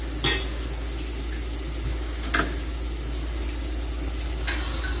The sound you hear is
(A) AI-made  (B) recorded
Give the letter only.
B